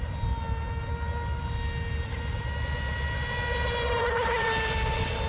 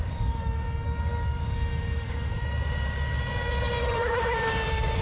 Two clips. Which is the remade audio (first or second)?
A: second